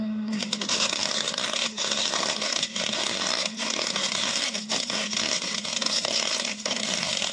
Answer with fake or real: fake